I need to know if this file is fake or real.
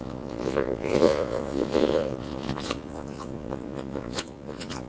fake